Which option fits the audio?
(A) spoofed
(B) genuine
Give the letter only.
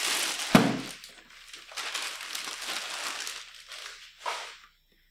B